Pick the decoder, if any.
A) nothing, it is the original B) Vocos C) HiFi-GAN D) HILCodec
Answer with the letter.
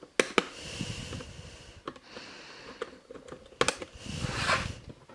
A